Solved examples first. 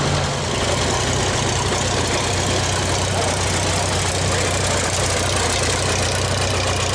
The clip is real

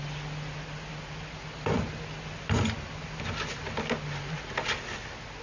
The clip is real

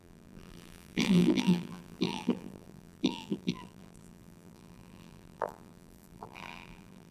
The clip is fake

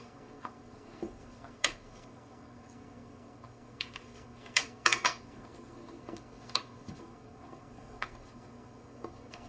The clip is fake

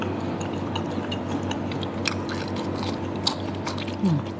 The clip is real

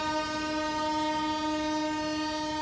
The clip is real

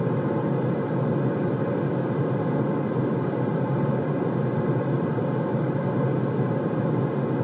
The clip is real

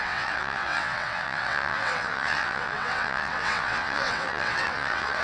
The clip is fake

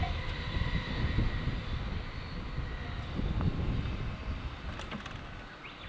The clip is real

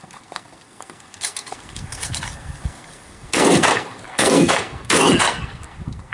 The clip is fake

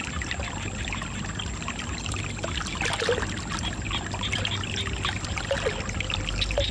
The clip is real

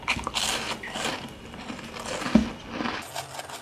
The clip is real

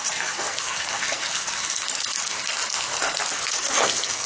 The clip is fake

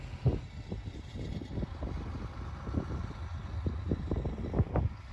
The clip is real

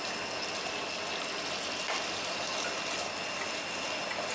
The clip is real